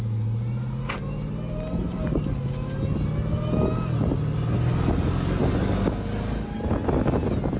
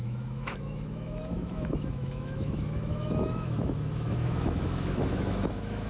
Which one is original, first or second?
first